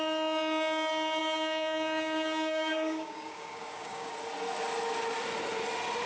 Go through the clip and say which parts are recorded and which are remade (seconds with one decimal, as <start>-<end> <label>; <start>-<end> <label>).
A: 0.0-1.2 recorded; 1.2-4.1 remade; 4.1-6.1 recorded